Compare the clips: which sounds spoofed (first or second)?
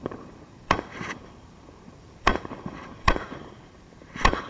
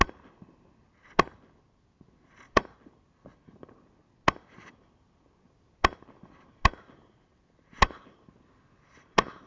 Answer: first